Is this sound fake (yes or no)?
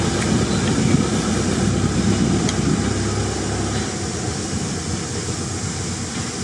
no